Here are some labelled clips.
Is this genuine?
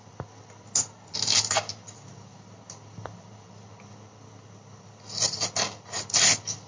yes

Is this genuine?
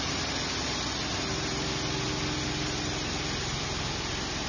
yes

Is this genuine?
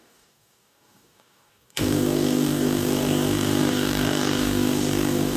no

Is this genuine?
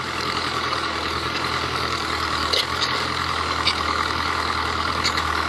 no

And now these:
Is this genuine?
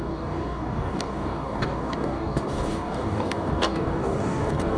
no